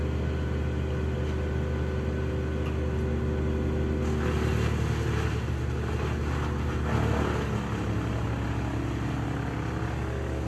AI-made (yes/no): no